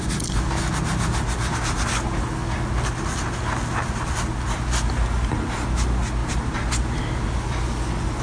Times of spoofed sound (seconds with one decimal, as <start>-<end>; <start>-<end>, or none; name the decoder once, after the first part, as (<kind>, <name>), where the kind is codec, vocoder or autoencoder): none